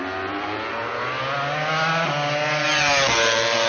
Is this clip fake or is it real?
real